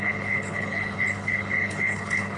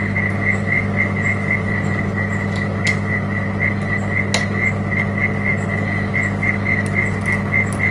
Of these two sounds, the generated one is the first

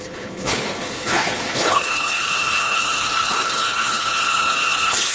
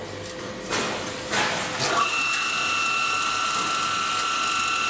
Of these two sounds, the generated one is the first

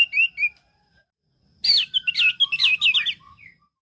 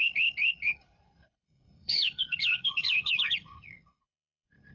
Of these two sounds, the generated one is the second